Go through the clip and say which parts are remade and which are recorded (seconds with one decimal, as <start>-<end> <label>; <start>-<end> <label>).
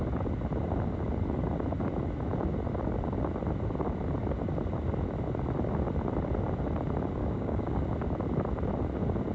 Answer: 0.0-7.2 recorded; 7.2-7.9 remade; 7.9-9.3 recorded